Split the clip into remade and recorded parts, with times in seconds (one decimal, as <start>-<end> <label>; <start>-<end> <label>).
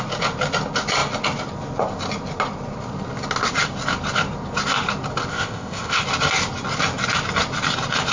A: 0.0-5.3 recorded; 5.3-6.0 remade; 6.0-8.1 recorded